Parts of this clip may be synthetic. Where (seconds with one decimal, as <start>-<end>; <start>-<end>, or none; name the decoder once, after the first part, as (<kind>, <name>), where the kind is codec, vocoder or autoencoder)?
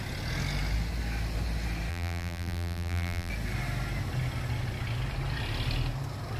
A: 1.9-3.3 (vocoder, BigVGAN v2)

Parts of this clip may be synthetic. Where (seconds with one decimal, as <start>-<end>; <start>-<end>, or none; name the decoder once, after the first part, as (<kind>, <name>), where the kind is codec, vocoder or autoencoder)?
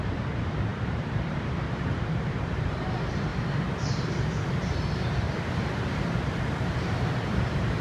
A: 0.0-3.3 (vocoder, BigVGAN v2); 4.5-7.8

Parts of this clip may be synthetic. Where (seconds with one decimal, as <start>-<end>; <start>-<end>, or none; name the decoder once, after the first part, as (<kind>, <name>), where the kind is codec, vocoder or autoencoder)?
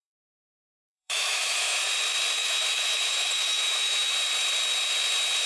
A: 0.0-1.9 (autoencoder, DAC-VAE); 2.4-4.1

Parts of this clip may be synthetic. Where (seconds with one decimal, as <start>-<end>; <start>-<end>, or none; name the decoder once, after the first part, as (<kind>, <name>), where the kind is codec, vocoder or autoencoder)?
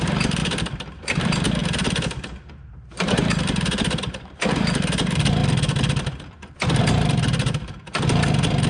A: 0.0-1.6 (vocoder, BigVGAN v2); 2.5-5.4; 6.8-8.7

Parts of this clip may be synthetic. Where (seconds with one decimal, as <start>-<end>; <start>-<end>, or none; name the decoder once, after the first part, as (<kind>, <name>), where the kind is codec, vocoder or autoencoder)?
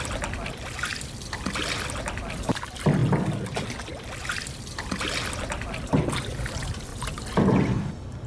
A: 0.0-0.9 (vocoder, BigVGAN v2); 2.0-3.0; 5.3-6.9; 7.6-8.3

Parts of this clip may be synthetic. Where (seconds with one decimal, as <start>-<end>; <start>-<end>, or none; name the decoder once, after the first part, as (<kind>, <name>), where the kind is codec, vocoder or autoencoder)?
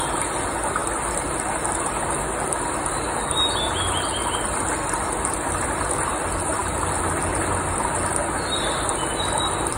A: none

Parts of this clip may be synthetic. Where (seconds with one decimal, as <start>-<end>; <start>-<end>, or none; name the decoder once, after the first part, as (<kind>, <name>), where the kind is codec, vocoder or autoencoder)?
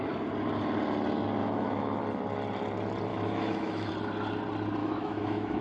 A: 1.4-2.0 (autoencoder, DAC-VAE); 3.1-3.9; 4.8-5.6